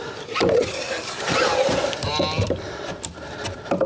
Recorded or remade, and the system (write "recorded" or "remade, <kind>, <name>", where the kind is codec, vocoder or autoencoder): remade, vocoder, BigVGAN v2